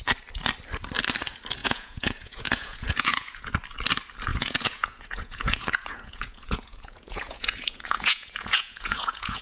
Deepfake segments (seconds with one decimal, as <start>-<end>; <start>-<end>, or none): 1.6-3.5; 4.3-9.4